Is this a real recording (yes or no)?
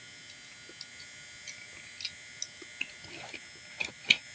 yes